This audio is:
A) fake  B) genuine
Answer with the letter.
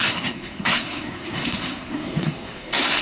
A